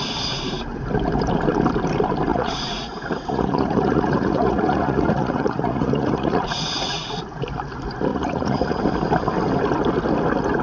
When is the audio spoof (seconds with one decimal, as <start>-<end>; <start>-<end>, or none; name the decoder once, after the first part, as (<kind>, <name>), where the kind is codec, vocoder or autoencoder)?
2.3-7.2 (vocoder, Vocos); 8.1-8.8